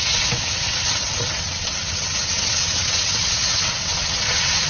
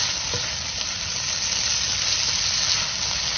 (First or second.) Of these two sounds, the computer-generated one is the first